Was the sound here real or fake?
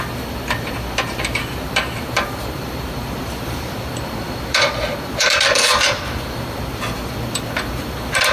fake